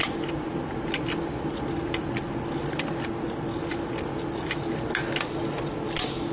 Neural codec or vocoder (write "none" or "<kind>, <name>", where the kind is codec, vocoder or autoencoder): none